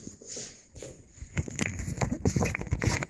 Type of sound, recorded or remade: remade